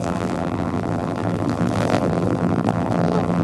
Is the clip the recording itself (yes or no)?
no